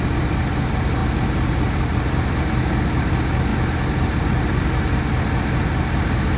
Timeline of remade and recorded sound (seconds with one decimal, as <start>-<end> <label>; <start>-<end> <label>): 0.0-6.4 recorded